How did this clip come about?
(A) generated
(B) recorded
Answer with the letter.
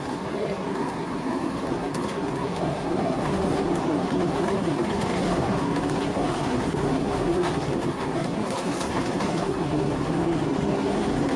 A